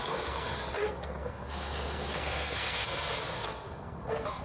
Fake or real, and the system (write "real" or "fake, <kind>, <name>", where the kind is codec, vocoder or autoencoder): fake, codec, SNAC